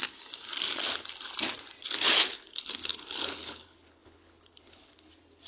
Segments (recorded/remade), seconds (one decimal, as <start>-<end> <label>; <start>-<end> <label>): 0.0-1.8 recorded; 1.8-5.1 remade; 5.1-5.5 recorded